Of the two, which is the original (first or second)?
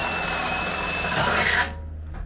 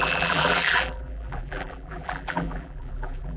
first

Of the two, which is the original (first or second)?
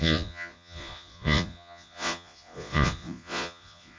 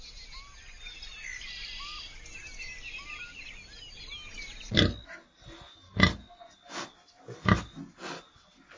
second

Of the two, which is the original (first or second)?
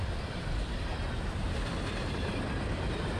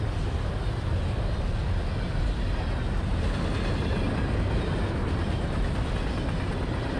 second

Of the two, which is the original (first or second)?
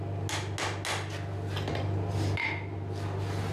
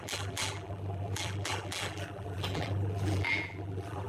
first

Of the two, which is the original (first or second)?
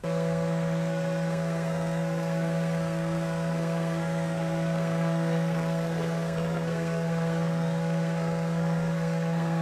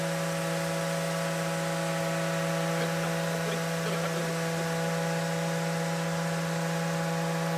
second